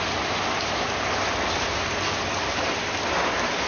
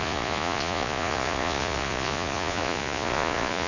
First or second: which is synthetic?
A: second